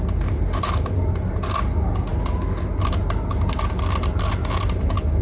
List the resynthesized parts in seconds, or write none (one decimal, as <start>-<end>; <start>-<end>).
none